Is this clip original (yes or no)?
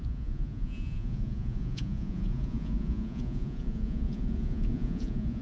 no